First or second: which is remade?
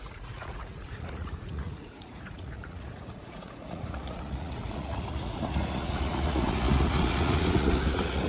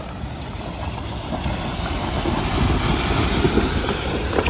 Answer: first